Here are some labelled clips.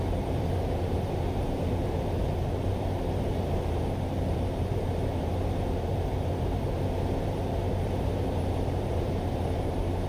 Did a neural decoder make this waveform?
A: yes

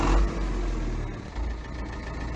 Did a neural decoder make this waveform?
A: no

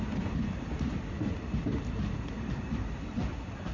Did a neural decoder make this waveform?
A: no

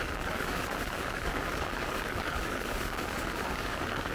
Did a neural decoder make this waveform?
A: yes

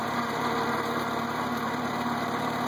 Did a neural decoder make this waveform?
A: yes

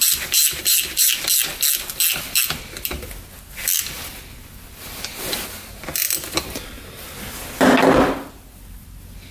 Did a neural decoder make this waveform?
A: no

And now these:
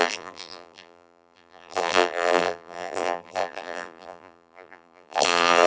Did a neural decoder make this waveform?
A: yes